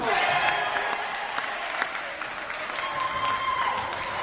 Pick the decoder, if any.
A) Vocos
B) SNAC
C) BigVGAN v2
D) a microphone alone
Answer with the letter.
C